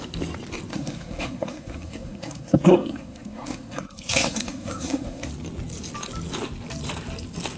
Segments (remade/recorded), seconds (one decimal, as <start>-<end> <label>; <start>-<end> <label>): 0.0-0.7 recorded; 0.7-5.3 remade; 5.3-7.6 recorded